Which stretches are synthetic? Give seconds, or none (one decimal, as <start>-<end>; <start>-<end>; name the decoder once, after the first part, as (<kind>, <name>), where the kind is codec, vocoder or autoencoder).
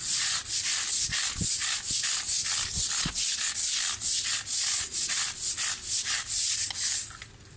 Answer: none